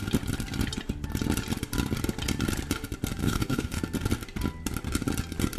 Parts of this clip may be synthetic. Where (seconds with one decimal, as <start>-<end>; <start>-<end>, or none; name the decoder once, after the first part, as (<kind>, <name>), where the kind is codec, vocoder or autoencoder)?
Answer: 3.2-3.8 (codec, DAC)